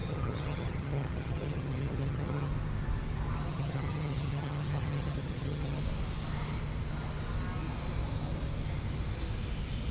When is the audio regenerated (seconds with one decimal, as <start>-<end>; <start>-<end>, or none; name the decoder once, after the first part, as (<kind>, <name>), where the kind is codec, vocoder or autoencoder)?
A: 0.0-2.5 (vocoder, HiFi-GAN); 3.5-5.8